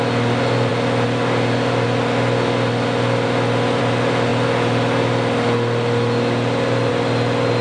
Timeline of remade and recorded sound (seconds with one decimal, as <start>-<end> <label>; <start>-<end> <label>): 0.0-7.6 recorded